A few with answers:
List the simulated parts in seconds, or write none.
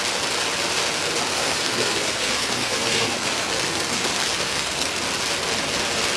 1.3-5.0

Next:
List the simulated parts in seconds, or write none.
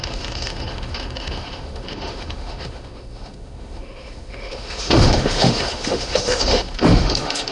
0.0-7.5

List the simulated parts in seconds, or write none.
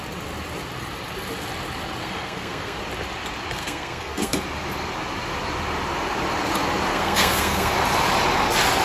2.0-2.8; 3.6-4.4; 6.9-7.7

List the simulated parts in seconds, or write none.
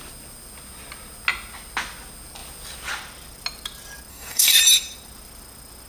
4.1-4.6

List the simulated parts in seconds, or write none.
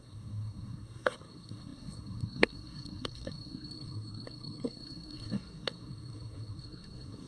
0.0-7.3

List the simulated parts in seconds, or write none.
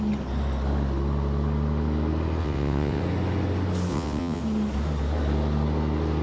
2.4-3.0; 3.9-4.4